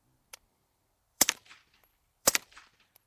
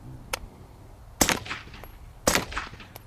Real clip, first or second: second